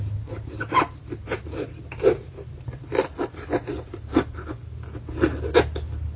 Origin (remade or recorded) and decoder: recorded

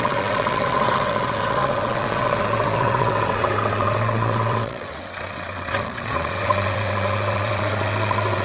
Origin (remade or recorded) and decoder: remade, vocoder, WaveNeXt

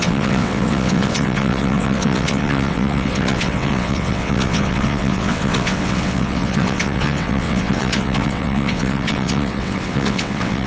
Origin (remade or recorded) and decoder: remade, vocoder, WaveNeXt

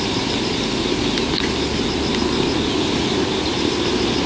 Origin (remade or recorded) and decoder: recorded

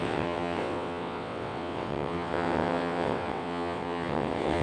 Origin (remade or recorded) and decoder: remade, vocoder, WaveNeXt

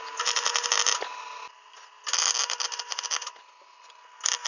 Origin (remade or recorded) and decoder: recorded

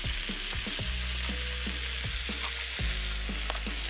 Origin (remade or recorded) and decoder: recorded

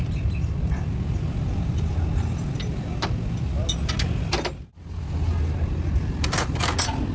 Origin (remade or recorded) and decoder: recorded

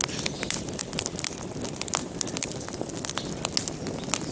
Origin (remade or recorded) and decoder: recorded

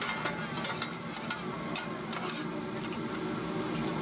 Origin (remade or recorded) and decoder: recorded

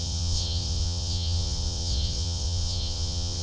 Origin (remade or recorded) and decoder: remade, vocoder, WaveNeXt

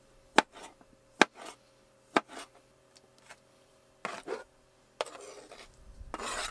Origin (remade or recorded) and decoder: recorded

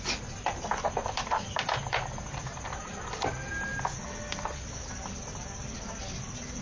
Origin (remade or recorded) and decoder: recorded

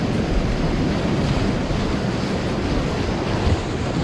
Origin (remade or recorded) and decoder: recorded